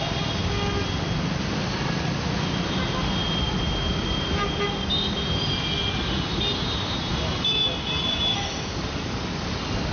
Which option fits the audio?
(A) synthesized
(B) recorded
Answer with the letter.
B